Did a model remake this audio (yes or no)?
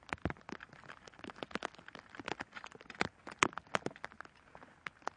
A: no